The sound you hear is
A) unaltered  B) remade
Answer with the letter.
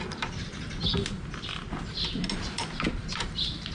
A